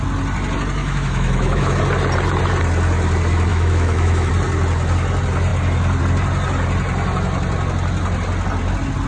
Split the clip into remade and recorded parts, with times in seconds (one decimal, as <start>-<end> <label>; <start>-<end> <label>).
0.0-0.8 recorded; 0.8-1.8 remade; 1.8-3.5 recorded; 3.5-4.3 remade; 4.3-9.1 recorded